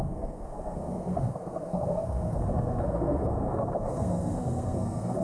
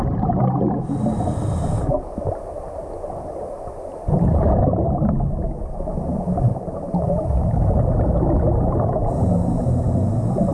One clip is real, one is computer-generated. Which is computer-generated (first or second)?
first